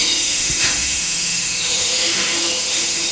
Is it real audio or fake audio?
fake